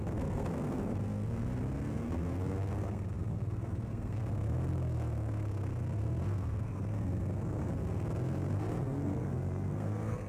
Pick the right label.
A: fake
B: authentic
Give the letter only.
A